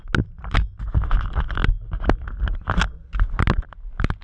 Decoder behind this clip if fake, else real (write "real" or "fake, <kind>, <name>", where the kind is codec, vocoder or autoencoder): real